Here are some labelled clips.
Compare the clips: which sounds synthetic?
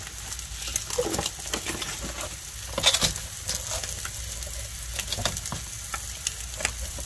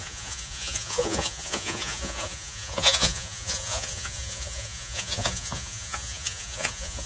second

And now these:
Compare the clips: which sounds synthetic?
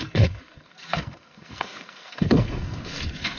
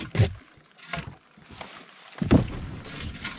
first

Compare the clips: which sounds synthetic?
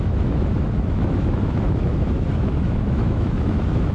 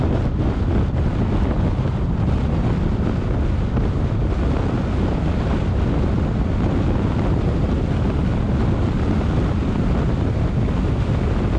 first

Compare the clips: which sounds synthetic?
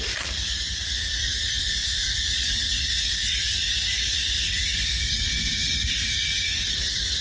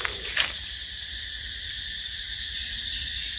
first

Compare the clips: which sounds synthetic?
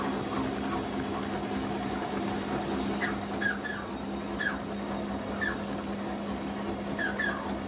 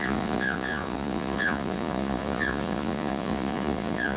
second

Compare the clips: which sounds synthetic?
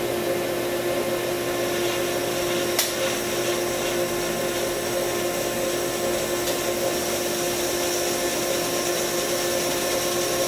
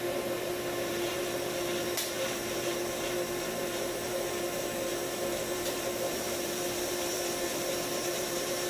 second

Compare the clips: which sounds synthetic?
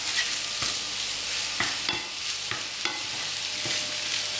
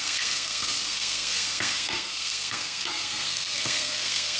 second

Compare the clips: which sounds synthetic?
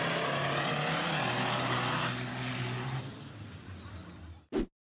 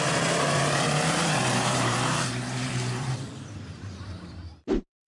second